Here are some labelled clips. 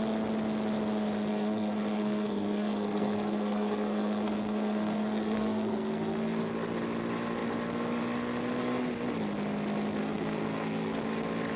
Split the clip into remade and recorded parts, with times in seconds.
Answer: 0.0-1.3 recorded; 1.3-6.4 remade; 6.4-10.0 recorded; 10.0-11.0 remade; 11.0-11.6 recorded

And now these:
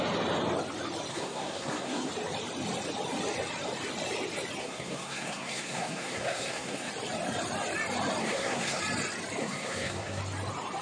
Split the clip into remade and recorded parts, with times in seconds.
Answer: 0.0-1.1 recorded; 1.1-2.1 remade; 2.1-4.6 recorded; 4.6-6.9 remade; 6.9-8.2 recorded; 8.2-8.8 remade; 8.8-9.4 recorded; 9.4-10.2 remade; 10.2-10.8 recorded

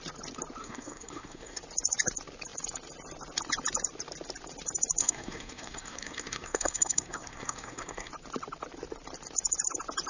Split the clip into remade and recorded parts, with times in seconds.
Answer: 0.0-0.6 recorded; 0.6-1.6 remade; 1.6-5.0 recorded; 5.0-8.1 remade; 8.1-10.1 recorded

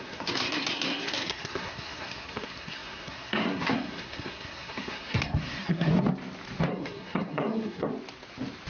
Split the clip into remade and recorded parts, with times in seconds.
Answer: 0.0-5.9 remade; 5.9-6.7 recorded; 6.7-7.9 remade; 7.9-8.7 recorded

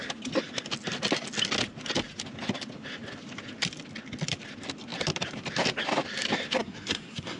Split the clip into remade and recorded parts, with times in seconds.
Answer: 0.0-6.6 recorded; 6.6-7.4 remade

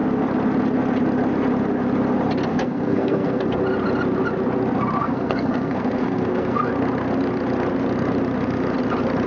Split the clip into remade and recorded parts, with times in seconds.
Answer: 0.0-2.5 recorded; 2.5-3.6 remade; 3.6-5.0 recorded; 5.0-6.7 remade; 6.7-9.3 recorded